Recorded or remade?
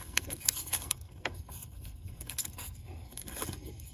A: remade